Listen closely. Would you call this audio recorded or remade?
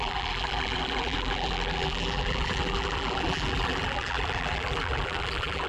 remade